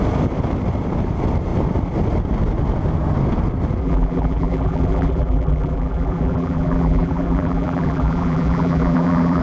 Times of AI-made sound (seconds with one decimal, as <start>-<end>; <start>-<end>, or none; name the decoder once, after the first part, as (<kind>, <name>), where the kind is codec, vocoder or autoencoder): 3.8-9.4 (vocoder, BigVGAN v2)